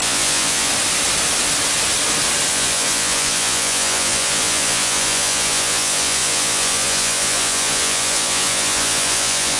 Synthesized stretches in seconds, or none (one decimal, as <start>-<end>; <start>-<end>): 0.0-0.7; 2.5-9.6